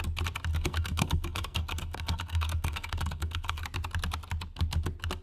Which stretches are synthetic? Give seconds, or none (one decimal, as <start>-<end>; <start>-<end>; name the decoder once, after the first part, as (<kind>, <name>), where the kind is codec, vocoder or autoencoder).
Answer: 0.5-3.6 (codec, SNAC)